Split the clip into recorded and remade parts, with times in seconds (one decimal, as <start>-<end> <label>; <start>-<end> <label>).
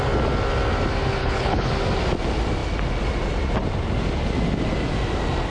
0.0-1.2 recorded; 1.2-1.7 remade; 1.7-5.5 recorded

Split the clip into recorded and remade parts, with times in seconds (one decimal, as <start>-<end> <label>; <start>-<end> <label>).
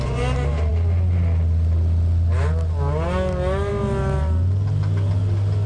0.0-5.7 recorded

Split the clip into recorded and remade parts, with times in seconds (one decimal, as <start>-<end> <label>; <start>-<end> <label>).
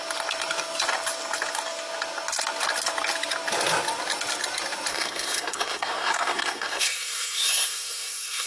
0.0-4.9 recorded; 4.9-8.5 remade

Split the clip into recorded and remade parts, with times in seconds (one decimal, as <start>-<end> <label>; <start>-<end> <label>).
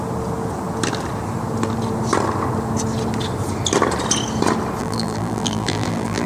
0.0-4.8 recorded; 4.8-6.3 remade